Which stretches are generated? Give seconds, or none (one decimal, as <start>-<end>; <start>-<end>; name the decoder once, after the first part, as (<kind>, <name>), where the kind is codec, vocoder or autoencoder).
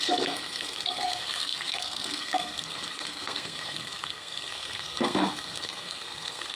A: 0.0-6.6 (codec, SNAC)